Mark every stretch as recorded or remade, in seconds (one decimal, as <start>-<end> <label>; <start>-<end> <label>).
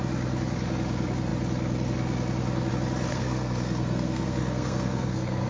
0.0-3.1 recorded; 3.1-5.5 remade